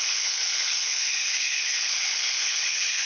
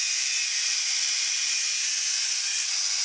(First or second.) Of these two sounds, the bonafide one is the second